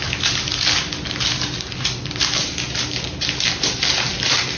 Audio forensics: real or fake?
real